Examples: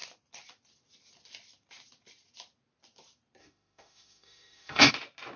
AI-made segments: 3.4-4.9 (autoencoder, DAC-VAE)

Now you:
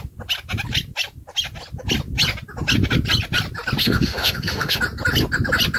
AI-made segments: 3.8-4.8 (autoencoder, DAC-VAE)

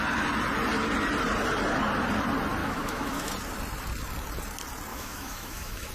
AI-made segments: 2.6-3.3 (autoencoder, DAC-VAE); 4.9-5.9